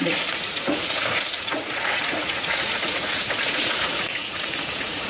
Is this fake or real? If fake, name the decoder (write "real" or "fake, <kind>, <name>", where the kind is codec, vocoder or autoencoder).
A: fake, vocoder, Vocos